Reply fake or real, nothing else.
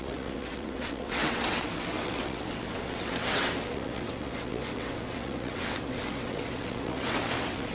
fake